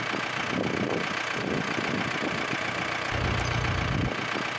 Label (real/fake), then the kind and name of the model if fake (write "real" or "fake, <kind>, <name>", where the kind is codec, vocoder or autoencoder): real